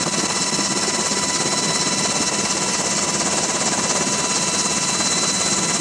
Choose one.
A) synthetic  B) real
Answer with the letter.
B